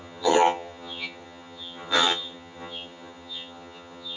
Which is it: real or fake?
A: fake